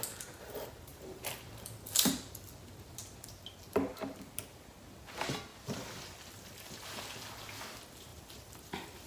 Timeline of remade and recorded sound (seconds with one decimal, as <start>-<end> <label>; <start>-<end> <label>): 0.0-0.9 recorded; 0.9-2.1 remade; 2.1-5.5 recorded; 5.5-7.0 remade; 7.0-8.1 recorded; 8.1-9.1 remade